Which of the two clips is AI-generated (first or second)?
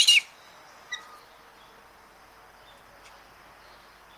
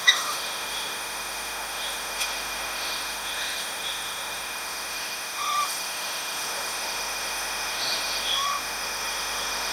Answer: second